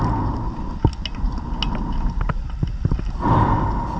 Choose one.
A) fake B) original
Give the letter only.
B